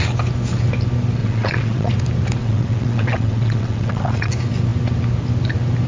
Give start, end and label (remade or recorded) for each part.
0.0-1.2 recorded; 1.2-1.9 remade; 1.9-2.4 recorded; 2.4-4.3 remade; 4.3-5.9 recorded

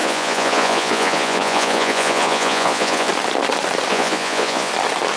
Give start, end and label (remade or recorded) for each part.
0.0-3.1 remade; 3.1-3.9 recorded; 3.9-4.7 remade; 4.7-5.2 recorded

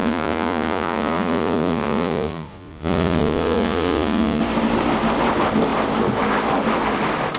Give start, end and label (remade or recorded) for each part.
0.0-4.4 remade; 4.4-7.4 recorded

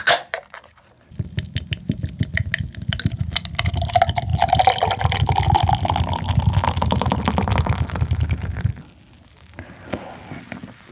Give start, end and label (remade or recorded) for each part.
0.0-10.9 recorded

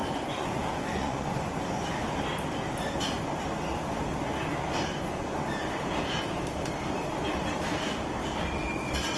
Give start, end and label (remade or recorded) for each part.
0.0-1.9 remade; 1.9-4.9 recorded; 4.9-5.5 remade; 5.5-9.2 recorded

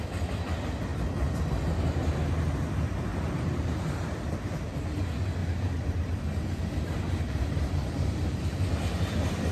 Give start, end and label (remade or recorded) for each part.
0.0-0.9 recorded; 0.9-1.6 remade; 1.6-3.1 recorded; 3.1-5.0 remade; 5.0-5.4 recorded; 5.4-8.6 remade; 8.6-9.5 recorded

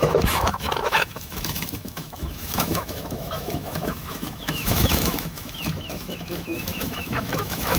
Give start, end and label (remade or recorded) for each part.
0.0-7.8 remade